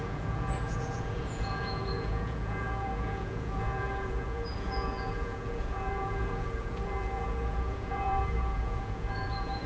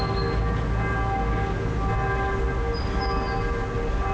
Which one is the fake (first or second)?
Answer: first